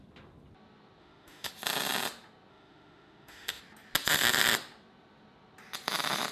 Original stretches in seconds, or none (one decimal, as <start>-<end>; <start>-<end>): 0.0-1.0; 1.5-2.5; 3.6-6.3